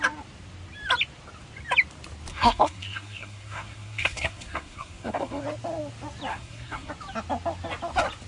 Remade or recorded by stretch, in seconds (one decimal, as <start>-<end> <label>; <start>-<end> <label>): 0.0-2.3 recorded; 2.3-5.4 remade; 5.4-6.3 recorded; 6.3-6.9 remade; 6.9-8.3 recorded